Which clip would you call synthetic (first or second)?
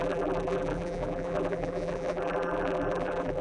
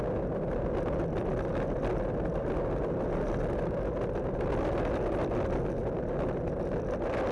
first